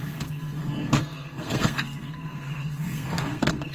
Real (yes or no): no